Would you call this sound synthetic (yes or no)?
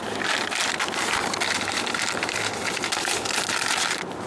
no